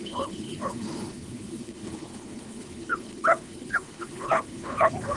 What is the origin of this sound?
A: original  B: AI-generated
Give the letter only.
B